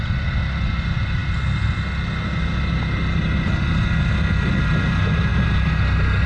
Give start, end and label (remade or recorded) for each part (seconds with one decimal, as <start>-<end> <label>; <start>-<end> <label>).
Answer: 0.0-6.3 recorded